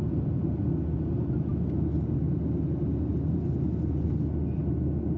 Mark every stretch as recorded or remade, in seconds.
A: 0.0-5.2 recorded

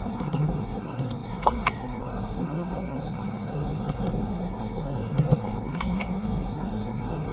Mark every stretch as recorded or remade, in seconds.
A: 0.0-7.3 remade